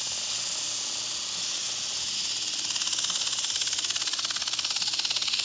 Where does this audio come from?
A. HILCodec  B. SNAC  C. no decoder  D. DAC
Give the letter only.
C